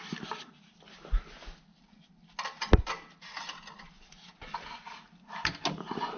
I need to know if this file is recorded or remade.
recorded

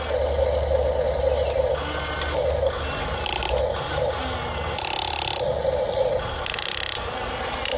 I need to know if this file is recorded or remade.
recorded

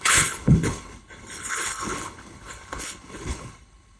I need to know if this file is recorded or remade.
remade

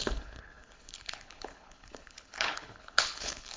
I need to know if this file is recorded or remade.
remade